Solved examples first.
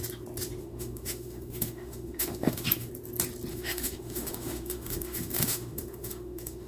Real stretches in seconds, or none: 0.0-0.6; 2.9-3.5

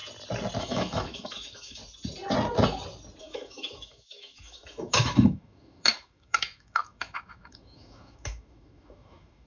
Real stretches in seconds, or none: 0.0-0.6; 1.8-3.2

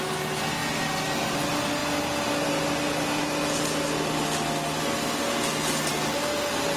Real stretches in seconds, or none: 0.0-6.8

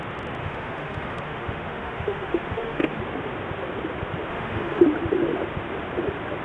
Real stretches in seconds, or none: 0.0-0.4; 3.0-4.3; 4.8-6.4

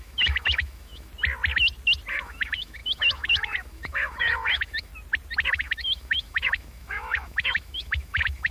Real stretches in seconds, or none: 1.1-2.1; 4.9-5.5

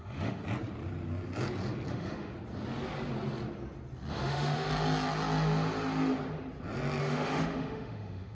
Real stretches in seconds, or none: 0.4-1.9; 2.3-4.1; 4.7-7.0

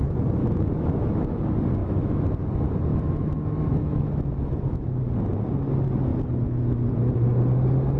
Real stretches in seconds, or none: 0.0-0.4; 1.4-1.8; 2.4-2.9; 5.0-8.0

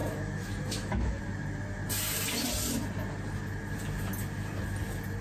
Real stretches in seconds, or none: 1.2-5.2